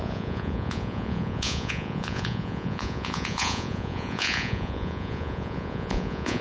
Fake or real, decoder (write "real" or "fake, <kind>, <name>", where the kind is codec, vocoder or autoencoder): fake, vocoder, Vocos